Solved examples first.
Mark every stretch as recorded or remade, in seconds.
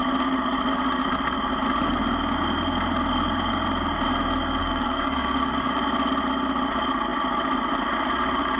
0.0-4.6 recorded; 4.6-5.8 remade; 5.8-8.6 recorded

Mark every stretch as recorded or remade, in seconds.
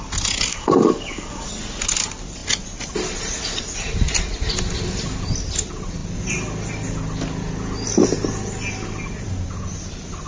0.0-0.5 recorded; 0.5-1.5 remade; 1.5-10.3 recorded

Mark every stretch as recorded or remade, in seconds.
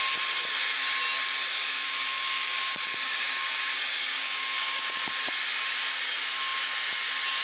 0.0-1.5 recorded; 1.5-5.0 remade; 5.0-7.4 recorded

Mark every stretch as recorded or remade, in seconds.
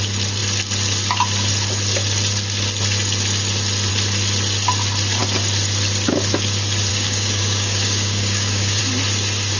0.0-6.9 recorded; 6.9-8.8 remade; 8.8-9.6 recorded